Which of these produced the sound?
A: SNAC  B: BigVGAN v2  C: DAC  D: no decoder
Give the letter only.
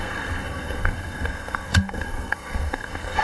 A